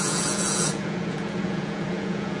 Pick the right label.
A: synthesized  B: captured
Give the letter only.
A